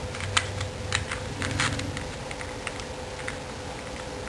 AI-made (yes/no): no